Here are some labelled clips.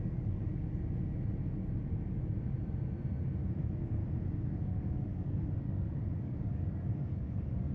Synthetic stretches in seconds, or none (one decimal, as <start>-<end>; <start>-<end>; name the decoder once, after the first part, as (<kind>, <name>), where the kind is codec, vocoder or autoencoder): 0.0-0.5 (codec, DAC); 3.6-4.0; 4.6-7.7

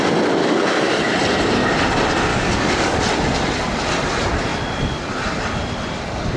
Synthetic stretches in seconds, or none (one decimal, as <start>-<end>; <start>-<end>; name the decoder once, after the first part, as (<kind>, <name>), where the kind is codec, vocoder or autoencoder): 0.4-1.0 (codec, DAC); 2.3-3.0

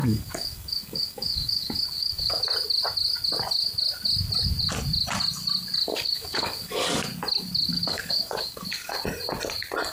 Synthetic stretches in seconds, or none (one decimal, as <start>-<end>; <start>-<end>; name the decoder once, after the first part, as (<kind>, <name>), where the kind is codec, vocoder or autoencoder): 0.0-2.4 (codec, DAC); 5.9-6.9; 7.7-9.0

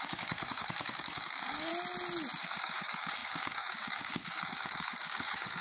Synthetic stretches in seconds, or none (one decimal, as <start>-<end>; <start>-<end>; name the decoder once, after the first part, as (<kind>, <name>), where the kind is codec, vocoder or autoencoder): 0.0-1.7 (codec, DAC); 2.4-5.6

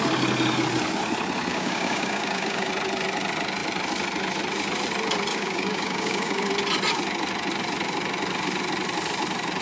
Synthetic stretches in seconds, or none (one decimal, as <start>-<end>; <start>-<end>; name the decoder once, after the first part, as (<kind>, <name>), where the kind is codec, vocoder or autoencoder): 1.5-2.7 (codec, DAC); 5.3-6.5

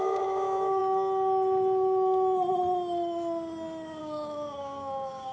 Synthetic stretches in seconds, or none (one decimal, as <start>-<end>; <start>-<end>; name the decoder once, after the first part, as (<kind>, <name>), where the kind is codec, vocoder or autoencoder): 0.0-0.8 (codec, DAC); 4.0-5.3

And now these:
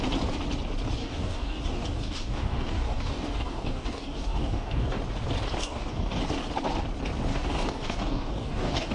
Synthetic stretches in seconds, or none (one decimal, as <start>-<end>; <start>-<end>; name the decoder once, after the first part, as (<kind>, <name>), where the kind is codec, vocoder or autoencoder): 1.0-5.0 (codec, DAC); 5.6-6.2; 7.3-8.9